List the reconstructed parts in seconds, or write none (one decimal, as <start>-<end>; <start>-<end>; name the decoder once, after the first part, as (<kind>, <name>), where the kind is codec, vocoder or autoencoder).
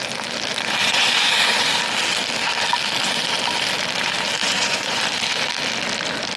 0.8-1.7 (vocoder, Vocos); 4.4-5.0